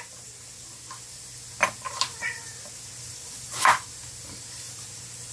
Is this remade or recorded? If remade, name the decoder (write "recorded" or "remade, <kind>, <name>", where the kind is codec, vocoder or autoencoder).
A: recorded